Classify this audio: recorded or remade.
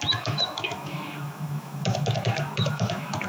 remade